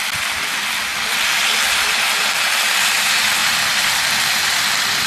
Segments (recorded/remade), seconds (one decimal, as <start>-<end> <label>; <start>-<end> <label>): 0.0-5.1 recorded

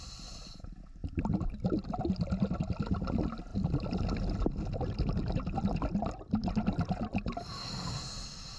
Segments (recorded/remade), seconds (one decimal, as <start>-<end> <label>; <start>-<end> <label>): 0.0-8.6 recorded

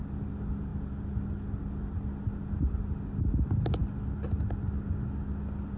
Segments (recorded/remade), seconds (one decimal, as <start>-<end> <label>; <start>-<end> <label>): 0.0-5.8 recorded

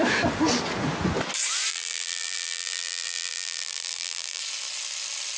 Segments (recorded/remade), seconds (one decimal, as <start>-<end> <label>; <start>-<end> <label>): 0.0-1.7 recorded; 1.7-4.4 remade; 4.4-5.4 recorded

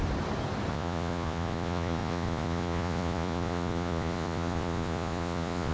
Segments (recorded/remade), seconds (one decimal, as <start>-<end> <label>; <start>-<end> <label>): 0.0-0.7 recorded; 0.7-5.7 remade

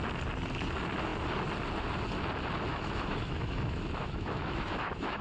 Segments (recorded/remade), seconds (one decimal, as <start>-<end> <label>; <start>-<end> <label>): 0.0-2.7 recorded; 2.7-5.2 remade

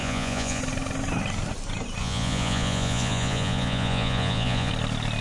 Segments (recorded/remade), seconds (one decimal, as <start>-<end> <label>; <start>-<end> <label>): 0.0-0.6 remade; 0.6-2.0 recorded; 2.0-4.7 remade; 4.7-5.2 recorded

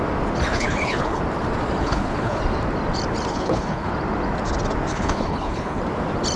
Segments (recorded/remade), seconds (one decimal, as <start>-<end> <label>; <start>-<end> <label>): 0.0-0.5 recorded; 0.5-1.2 remade; 1.2-1.8 recorded; 1.8-2.4 remade; 2.4-3.3 recorded; 3.3-3.9 remade; 3.9-4.9 recorded; 4.9-5.8 remade; 5.8-6.4 recorded